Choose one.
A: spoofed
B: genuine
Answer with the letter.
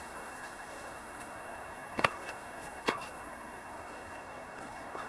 A